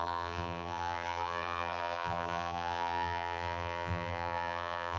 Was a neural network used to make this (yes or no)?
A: yes